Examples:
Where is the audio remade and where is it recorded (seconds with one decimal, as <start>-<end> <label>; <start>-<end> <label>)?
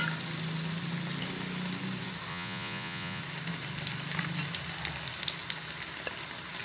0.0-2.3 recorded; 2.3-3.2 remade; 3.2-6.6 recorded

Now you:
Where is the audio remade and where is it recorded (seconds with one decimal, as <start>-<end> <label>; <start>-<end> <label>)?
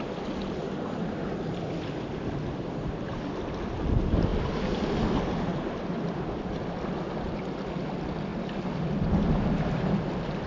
0.0-5.5 recorded; 5.5-6.9 remade; 6.9-10.5 recorded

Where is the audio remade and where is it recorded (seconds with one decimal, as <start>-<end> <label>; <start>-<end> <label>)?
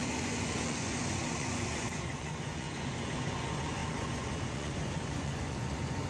0.0-6.1 remade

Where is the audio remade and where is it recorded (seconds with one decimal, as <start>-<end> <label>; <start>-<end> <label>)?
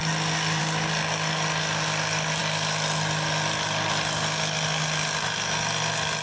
0.0-6.2 recorded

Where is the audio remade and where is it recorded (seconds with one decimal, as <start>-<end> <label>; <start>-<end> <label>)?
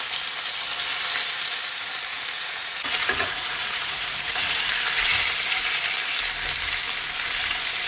0.0-2.1 recorded; 2.1-4.6 remade; 4.6-7.9 recorded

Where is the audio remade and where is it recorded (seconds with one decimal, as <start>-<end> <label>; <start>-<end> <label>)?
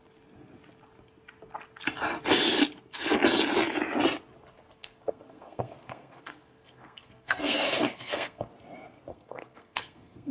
0.0-4.8 recorded; 4.8-8.5 remade; 8.5-9.1 recorded; 9.1-10.3 remade